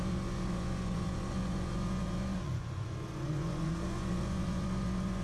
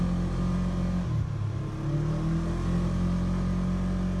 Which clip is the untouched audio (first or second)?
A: second